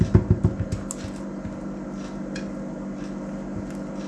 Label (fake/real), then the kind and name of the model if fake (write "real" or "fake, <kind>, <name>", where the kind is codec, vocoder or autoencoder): real